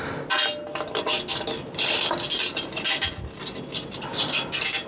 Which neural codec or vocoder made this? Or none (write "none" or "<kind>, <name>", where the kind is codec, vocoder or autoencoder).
none